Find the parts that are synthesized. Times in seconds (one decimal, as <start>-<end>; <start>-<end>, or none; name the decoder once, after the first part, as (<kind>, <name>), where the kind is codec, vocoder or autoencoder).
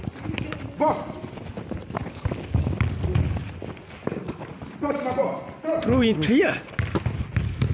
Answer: none